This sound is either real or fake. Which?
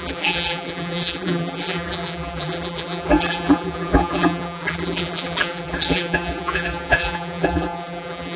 fake